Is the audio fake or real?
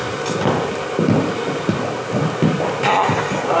real